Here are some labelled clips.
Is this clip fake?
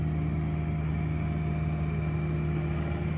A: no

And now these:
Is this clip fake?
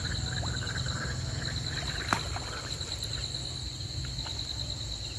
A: no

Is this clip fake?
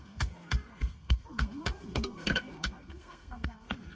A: yes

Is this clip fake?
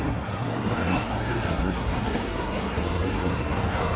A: yes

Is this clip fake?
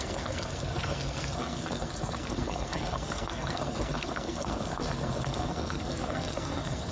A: yes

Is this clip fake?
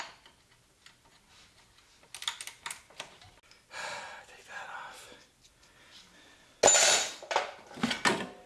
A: no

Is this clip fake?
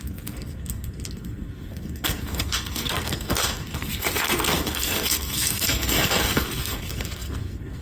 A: yes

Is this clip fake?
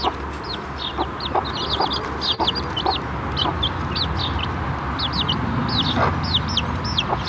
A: no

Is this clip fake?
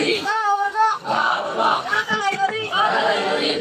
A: yes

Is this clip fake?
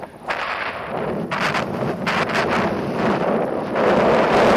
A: no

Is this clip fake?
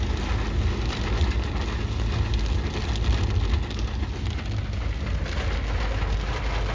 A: no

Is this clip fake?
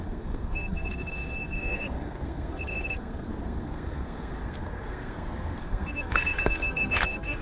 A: yes